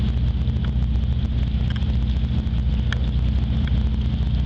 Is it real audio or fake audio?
real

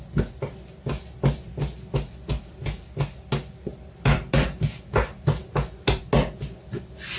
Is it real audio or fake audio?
real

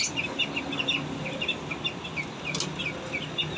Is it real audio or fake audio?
real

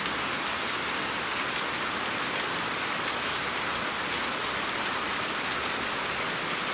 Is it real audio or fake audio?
real